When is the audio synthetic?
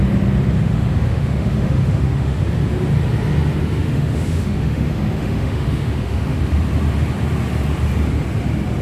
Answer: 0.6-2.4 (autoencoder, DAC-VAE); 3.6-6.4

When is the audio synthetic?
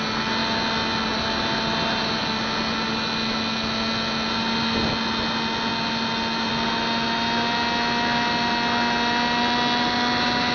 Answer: none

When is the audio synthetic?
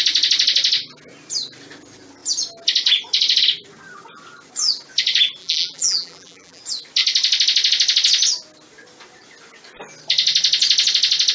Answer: 5.4-6.6 (vocoder, BigVGAN v2)